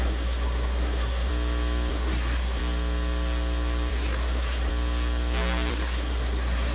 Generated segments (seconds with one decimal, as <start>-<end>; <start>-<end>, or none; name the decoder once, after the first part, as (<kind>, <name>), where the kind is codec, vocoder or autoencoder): 0.0-1.3 (codec, SNAC); 1.9-2.6; 3.9-4.7; 5.7-6.7